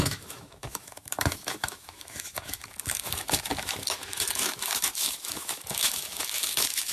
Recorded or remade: remade